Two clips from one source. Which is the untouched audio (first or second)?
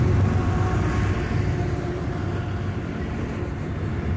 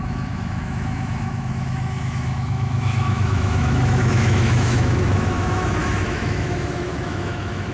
first